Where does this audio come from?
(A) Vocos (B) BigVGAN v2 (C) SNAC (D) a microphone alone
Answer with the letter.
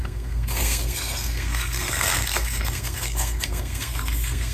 C